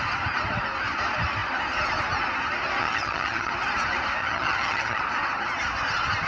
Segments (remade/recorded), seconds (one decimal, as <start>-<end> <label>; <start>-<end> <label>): 0.0-2.8 recorded; 2.8-3.5 remade; 3.5-4.2 recorded; 4.2-5.0 remade; 5.0-6.3 recorded

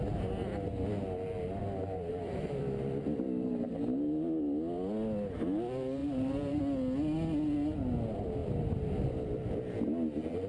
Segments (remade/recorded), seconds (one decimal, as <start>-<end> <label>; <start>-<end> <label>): 0.0-1.6 recorded; 1.6-2.6 remade; 2.6-6.0 recorded; 6.0-6.6 remade; 6.6-10.5 recorded

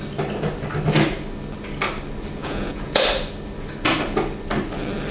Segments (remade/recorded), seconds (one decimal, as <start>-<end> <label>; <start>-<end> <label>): 0.0-2.4 recorded; 2.4-3.0 remade; 3.0-5.1 recorded